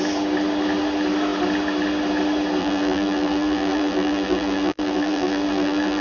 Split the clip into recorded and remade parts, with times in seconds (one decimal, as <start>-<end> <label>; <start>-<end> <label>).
0.0-2.6 recorded; 2.6-6.0 remade